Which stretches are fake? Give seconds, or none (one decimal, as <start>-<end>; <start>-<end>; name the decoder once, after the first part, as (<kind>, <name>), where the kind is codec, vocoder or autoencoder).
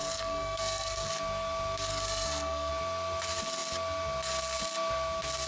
0.0-1.1 (codec, SNAC); 1.9-2.7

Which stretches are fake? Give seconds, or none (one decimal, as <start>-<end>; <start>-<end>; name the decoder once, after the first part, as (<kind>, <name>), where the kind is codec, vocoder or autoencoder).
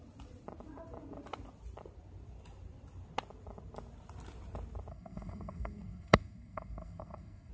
4.9-7.5 (codec, SNAC)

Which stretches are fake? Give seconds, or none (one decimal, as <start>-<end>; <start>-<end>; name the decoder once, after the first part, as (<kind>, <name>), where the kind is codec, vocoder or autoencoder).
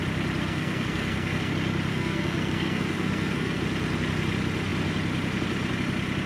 0.4-1.5 (codec, SNAC); 1.9-3.6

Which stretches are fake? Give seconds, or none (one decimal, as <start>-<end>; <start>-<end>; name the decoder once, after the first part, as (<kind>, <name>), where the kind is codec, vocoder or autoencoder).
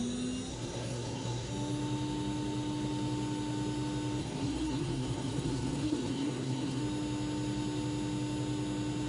0.5-1.5 (codec, SNAC); 4.2-6.8